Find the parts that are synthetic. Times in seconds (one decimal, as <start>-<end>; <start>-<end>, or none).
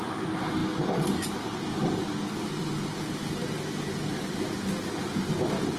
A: none